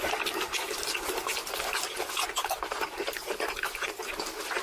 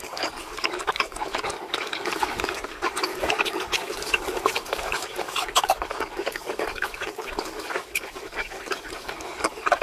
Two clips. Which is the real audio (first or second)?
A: first